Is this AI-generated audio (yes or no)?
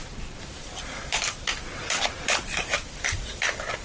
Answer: yes